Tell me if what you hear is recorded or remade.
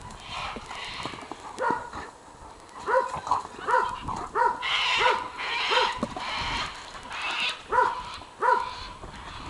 recorded